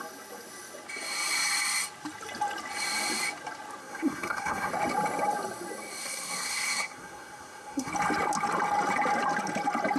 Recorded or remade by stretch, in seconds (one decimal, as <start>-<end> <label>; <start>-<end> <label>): 0.0-3.8 recorded; 3.8-4.7 remade; 4.7-6.0 recorded; 6.0-7.9 remade; 7.9-10.0 recorded